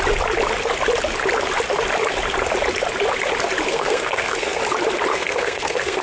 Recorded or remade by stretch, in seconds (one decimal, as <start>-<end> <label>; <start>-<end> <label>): 0.0-3.7 recorded; 3.7-4.6 remade; 4.6-5.1 recorded; 5.1-6.0 remade